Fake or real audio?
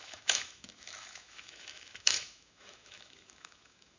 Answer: fake